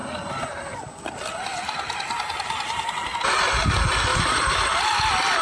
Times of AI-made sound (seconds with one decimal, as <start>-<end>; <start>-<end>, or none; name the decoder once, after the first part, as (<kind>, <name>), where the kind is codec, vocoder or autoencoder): 4.1-4.7 (vocoder, BigVGAN v2)